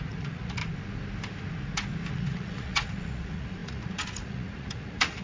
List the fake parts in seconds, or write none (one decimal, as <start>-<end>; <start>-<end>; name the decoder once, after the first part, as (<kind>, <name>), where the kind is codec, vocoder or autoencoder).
0.0-0.6 (vocoder, Vocos); 2.1-5.2